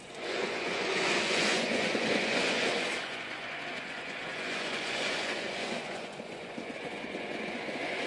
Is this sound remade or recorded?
remade